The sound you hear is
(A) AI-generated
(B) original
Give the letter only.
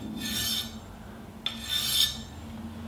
B